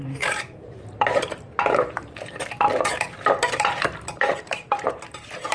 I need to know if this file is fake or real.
fake